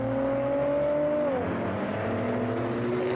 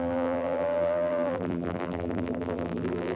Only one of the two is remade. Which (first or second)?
second